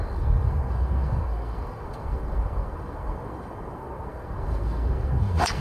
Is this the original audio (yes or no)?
no